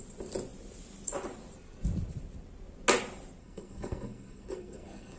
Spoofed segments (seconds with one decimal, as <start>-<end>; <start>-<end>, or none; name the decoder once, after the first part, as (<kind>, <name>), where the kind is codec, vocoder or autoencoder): 3.4-5.2 (codec, SNAC)